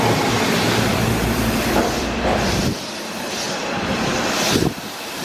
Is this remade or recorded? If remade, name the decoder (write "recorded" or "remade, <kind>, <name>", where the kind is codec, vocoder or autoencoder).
remade, vocoder, BigVGAN v2